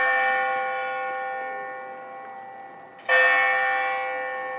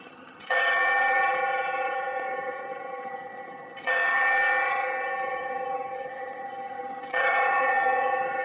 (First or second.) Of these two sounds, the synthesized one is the second